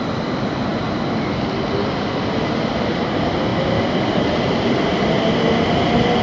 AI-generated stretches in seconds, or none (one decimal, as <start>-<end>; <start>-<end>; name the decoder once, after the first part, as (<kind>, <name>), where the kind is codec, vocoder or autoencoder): none